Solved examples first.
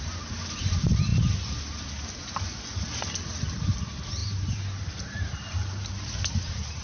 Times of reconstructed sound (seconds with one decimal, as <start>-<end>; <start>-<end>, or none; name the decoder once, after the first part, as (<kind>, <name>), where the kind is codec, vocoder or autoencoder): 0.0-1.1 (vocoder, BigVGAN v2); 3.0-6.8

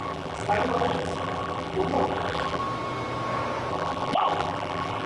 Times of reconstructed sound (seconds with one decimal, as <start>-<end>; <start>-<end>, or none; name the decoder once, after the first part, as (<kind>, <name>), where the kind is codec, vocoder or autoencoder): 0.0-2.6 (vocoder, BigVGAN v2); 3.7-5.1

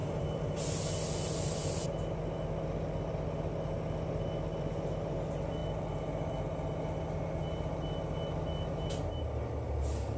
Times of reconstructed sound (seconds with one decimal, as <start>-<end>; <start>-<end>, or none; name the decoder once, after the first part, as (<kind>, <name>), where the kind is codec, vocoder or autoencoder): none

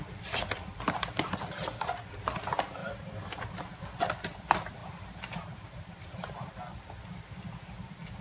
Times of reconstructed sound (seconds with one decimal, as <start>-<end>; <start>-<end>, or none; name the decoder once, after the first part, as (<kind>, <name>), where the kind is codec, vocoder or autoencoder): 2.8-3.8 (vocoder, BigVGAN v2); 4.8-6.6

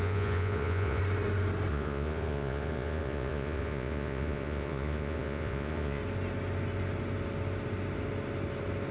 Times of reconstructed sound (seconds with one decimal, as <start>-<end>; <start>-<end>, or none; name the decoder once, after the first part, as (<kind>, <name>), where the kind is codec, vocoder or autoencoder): 0.0-1.0 (vocoder, Vocos); 1.7-6.0

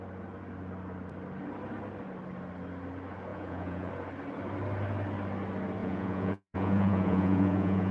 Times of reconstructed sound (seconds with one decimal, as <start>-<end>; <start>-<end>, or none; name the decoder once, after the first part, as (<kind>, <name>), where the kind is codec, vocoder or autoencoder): 3.3-3.9 (vocoder, Vocos); 5.8-7.9

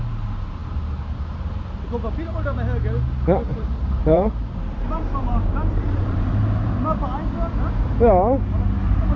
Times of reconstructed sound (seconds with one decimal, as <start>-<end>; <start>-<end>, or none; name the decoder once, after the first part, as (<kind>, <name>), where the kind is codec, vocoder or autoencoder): 3.5-6.7 (vocoder, BigVGAN v2)